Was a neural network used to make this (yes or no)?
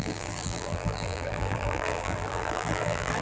yes